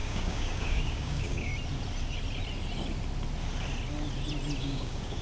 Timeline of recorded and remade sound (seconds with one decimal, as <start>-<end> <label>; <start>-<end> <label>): 0.0-1.5 remade; 1.5-4.6 recorded; 4.6-5.2 remade